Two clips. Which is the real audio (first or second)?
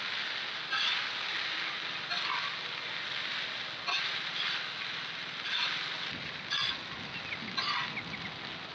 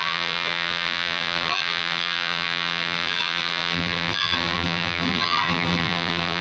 first